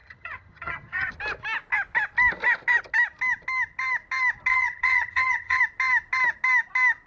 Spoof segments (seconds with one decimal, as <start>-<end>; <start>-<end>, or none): 0.0-1.1; 4.5-5.6

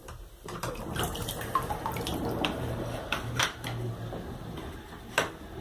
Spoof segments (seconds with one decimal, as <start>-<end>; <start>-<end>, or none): 0.0-3.4

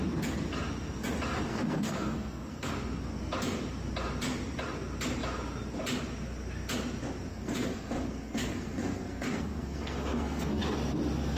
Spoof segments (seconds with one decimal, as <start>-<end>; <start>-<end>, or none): 1.5-2.7; 7.3-10.6

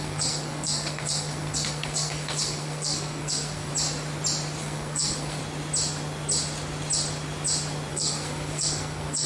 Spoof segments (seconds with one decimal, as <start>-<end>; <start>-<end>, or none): 0.0-3.7; 4.6-5.4; 7.9-9.3